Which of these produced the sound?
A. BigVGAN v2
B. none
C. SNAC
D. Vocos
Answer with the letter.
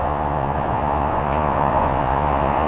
D